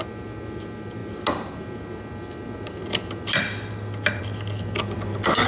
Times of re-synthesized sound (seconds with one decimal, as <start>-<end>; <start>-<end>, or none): none